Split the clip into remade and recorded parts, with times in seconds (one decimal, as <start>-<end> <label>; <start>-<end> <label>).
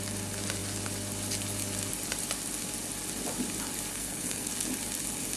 0.0-3.9 recorded; 3.9-4.5 remade; 4.5-5.4 recorded